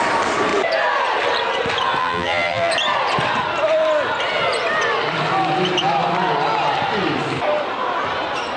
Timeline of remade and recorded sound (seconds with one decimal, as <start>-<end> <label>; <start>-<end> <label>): 0.0-2.0 recorded; 2.0-2.7 remade; 2.7-8.6 recorded